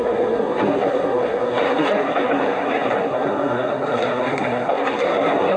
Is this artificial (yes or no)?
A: yes